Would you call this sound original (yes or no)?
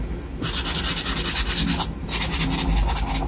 yes